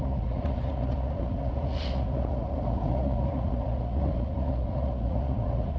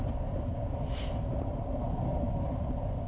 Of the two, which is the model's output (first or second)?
first